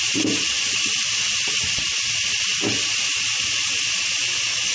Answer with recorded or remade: recorded